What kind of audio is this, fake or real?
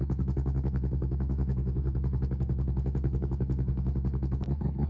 fake